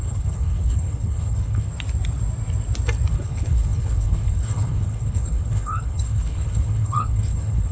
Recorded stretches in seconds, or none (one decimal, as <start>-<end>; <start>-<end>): 1.7-3.1